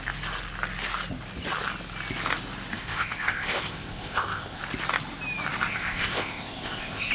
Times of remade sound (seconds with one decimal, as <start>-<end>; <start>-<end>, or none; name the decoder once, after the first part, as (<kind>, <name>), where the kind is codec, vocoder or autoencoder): 2.7-4.6 (codec, ZipCodec); 5.7-7.1